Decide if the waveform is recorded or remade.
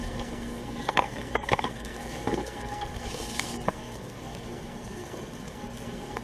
remade